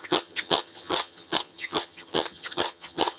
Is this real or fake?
fake